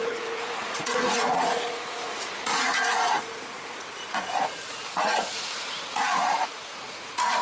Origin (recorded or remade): remade